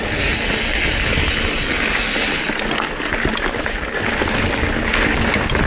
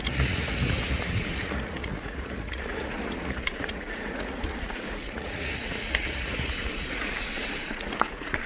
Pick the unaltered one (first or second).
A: first